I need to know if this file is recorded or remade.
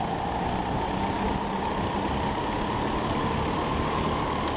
recorded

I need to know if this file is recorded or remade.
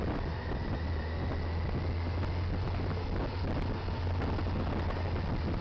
recorded